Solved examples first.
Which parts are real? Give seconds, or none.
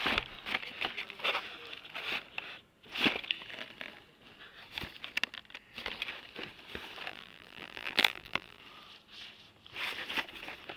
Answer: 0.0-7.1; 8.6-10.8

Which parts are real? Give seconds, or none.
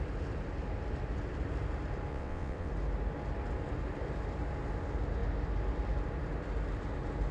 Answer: 0.0-2.1; 2.7-7.3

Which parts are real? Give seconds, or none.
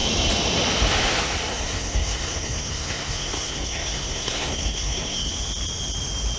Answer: 0.0-1.5; 5.3-6.4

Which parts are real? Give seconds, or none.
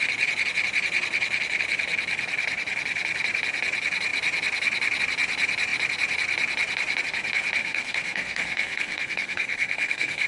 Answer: 0.0-7.6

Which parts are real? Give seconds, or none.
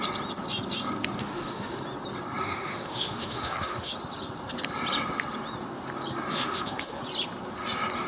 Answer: 0.0-1.2; 1.8-2.4; 3.9-6.3; 7.0-8.1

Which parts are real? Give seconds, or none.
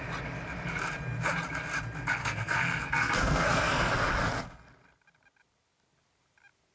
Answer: 0.0-2.2; 3.9-6.7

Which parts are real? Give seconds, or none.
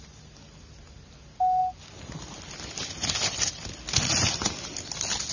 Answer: 0.0-5.3